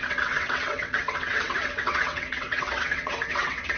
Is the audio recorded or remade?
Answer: remade